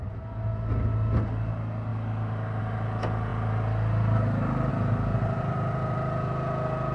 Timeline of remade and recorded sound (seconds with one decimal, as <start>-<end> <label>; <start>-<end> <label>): 0.0-6.9 recorded